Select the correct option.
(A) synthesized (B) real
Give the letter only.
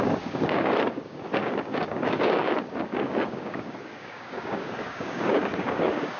A